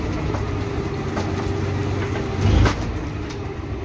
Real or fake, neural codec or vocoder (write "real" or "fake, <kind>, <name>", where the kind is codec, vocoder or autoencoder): real